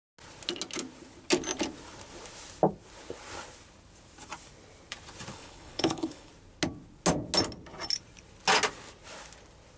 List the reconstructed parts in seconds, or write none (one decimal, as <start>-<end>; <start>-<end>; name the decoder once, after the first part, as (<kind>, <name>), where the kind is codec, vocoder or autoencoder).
5.3-6.3 (codec, HILCodec)